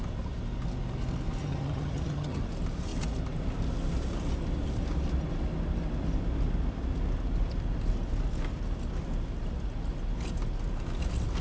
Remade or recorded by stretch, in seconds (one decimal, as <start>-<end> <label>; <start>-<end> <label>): 0.0-1.4 recorded; 1.4-2.4 remade; 2.4-11.4 recorded